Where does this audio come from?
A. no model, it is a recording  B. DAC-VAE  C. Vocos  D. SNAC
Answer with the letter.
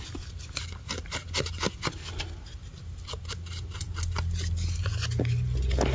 A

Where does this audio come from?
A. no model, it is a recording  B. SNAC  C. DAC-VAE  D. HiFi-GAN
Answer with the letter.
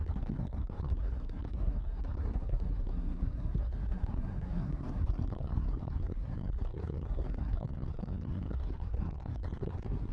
B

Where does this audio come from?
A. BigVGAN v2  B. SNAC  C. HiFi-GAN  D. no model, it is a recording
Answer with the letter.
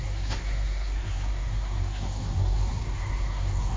B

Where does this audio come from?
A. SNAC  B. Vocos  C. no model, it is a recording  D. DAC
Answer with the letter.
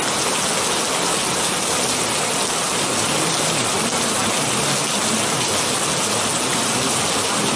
C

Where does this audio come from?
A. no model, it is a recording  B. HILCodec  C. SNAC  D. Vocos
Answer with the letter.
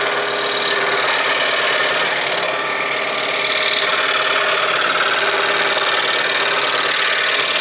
A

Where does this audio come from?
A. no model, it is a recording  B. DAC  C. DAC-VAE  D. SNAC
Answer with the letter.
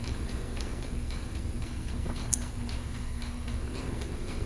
D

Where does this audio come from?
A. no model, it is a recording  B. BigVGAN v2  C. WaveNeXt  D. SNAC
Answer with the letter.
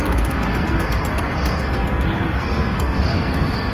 D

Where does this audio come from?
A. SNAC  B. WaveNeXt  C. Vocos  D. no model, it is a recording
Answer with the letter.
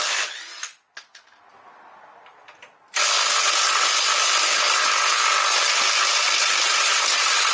D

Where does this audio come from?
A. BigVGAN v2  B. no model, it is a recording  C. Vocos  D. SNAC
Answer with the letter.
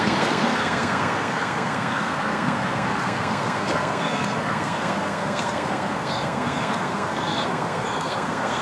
D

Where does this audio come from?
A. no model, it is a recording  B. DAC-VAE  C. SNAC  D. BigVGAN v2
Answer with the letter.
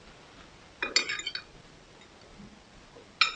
A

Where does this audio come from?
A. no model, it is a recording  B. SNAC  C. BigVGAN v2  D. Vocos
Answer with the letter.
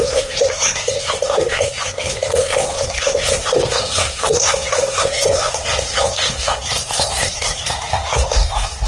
B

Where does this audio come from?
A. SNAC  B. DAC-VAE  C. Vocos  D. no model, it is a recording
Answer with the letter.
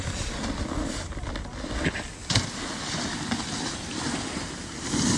D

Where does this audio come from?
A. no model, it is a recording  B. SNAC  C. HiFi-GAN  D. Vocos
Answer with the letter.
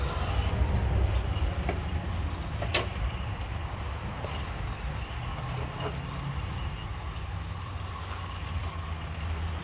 A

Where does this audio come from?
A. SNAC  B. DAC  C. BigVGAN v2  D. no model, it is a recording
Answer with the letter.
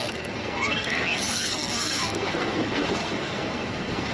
A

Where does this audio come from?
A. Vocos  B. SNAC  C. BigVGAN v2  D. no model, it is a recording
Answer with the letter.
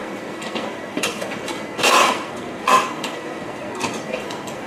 B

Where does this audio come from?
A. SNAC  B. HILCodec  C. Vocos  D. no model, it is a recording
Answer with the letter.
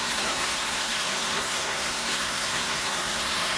A